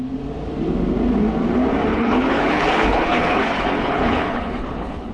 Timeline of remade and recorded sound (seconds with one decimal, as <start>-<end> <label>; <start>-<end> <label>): 0.0-1.9 recorded; 1.9-5.1 remade